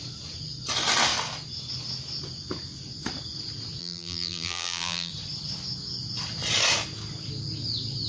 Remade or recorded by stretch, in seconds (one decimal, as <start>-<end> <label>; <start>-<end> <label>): 0.0-3.8 recorded; 3.8-5.1 remade; 5.1-8.1 recorded